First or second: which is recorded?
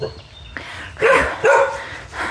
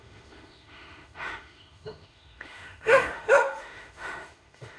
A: first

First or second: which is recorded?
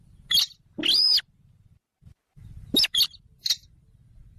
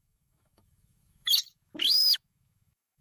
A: first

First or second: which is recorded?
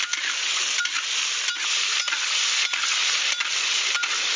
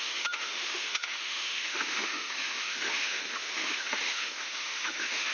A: first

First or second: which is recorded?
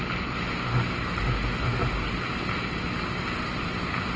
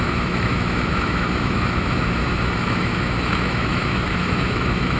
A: first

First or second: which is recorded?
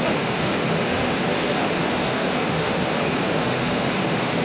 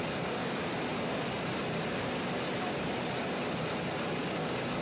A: second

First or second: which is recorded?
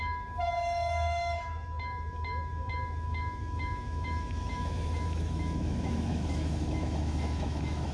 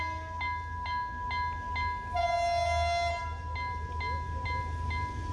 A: second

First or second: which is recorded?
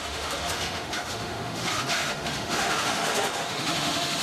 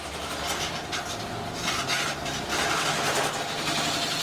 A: second